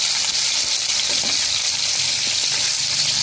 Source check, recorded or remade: recorded